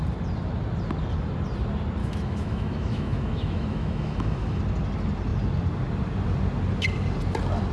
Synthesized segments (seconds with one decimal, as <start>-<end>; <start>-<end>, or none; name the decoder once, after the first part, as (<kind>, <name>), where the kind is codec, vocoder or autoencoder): 2.0-4.6 (autoencoder, DAC-VAE)